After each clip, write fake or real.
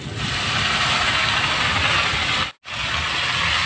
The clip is real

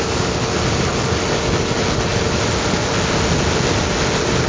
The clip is real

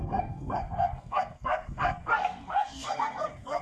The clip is fake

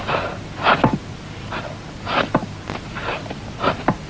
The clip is real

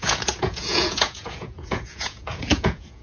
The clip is fake